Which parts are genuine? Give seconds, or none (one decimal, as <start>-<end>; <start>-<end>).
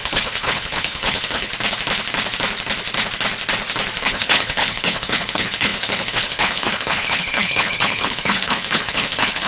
1.5-4.0